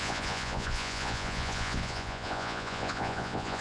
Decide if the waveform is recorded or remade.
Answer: remade